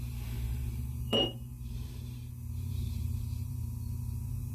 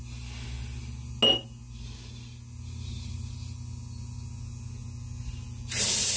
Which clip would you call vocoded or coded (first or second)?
first